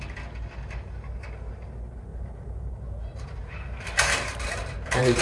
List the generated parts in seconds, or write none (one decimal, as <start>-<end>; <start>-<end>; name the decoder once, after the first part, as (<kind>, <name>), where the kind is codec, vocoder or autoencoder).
2.1-5.2 (vocoder, BigVGAN v2)